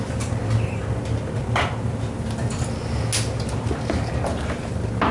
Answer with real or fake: real